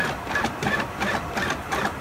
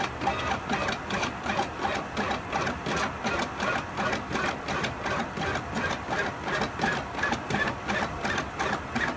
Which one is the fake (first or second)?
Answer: first